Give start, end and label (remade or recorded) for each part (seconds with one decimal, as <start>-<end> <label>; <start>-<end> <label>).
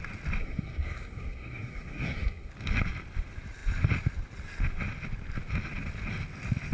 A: 0.0-0.4 recorded; 0.4-2.5 remade; 2.5-6.7 recorded